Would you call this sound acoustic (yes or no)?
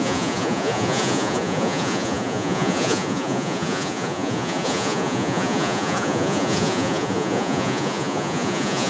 no